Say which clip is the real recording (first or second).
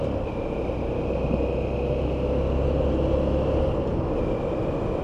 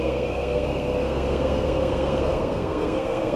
first